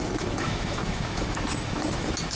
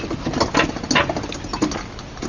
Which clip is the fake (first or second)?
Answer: first